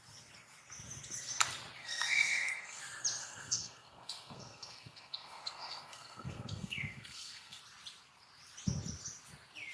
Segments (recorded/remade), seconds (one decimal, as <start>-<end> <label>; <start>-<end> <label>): 0.0-1.8 recorded; 1.8-2.8 remade; 2.8-3.2 recorded; 3.2-7.6 remade; 7.6-9.7 recorded